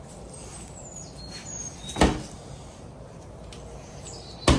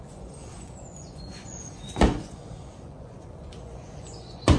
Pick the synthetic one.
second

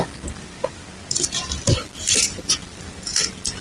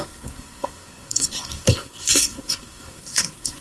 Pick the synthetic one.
second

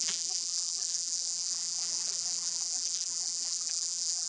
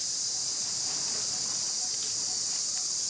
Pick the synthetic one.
first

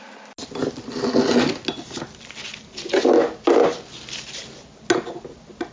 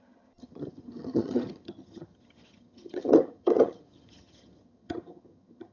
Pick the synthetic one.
second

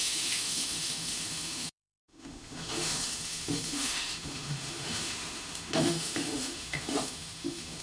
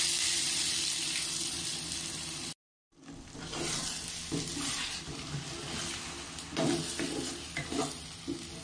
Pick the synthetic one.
first